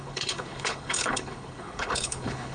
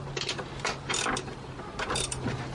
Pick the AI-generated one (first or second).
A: first